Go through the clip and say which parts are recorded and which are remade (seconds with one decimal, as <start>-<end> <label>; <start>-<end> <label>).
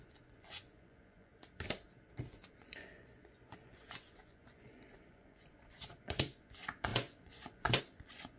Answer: 0.0-1.3 remade; 1.3-2.3 recorded; 2.3-8.4 remade